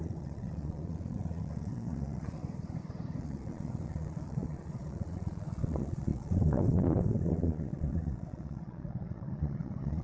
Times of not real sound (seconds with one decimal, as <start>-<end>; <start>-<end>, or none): 0.0-2.4; 3.2-10.0